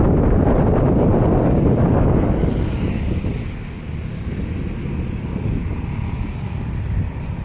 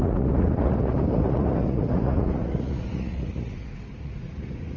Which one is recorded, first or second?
first